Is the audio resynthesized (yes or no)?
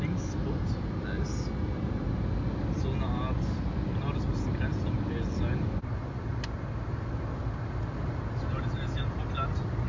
no